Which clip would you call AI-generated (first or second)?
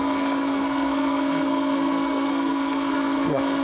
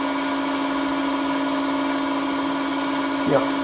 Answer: first